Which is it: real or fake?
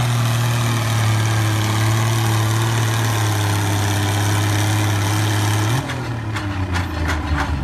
real